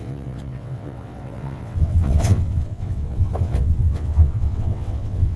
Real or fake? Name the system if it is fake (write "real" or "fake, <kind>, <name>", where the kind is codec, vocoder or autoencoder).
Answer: fake, vocoder, WaveNeXt